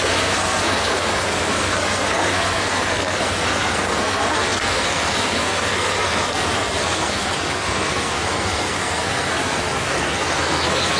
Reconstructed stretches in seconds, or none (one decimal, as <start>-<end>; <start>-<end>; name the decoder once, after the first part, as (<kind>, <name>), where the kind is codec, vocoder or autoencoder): 0.0-11.0 (codec, SNAC)